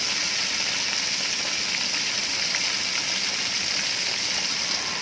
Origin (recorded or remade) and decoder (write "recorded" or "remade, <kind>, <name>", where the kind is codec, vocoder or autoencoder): recorded